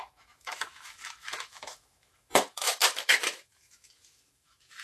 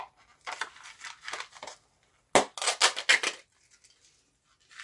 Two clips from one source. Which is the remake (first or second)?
first